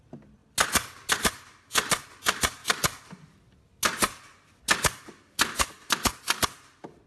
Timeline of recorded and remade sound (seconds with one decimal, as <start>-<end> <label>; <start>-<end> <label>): 0.0-7.1 recorded